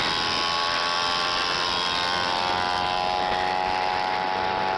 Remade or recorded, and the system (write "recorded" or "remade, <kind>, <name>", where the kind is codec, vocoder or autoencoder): recorded